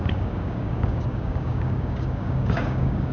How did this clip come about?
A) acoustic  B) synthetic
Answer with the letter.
B